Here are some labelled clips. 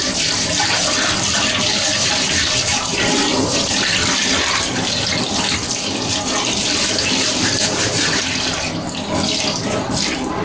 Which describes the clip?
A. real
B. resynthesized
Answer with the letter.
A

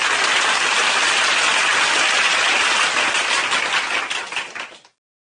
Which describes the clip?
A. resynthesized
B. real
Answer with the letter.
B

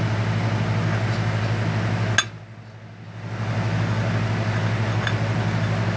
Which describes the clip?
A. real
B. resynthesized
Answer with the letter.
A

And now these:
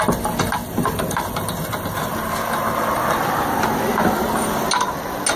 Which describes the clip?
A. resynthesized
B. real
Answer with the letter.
B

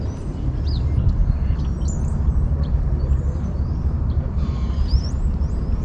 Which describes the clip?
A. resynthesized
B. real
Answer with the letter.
A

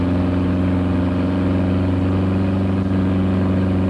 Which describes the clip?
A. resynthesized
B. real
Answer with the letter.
B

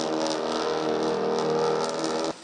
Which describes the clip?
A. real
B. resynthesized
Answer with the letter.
A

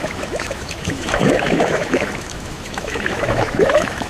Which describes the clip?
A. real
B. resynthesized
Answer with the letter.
B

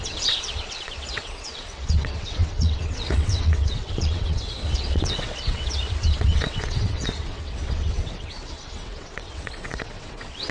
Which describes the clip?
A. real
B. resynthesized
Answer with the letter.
B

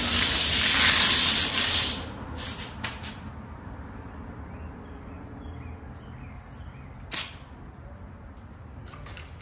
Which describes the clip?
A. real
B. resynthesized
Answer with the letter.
A